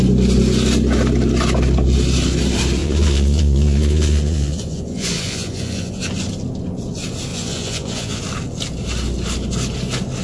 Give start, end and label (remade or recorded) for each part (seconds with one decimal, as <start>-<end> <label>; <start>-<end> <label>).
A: 0.0-2.8 recorded; 2.8-6.0 remade; 6.0-7.3 recorded; 7.3-8.2 remade; 8.2-10.2 recorded